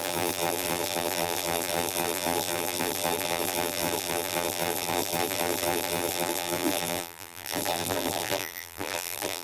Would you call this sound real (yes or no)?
no